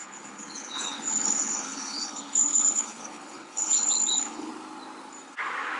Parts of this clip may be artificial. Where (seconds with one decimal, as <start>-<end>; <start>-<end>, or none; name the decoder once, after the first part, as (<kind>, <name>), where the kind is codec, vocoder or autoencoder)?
0.0-4.5 (codec, HILCodec)